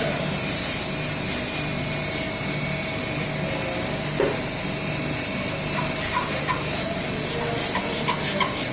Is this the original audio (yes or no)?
yes